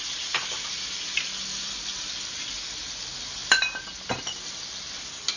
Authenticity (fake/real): real